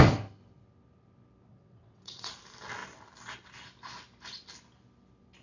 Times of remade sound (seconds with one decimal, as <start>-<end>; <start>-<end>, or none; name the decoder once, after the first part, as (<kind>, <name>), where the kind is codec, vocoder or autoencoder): 1.5-2.3 (vocoder, WaveNeXt)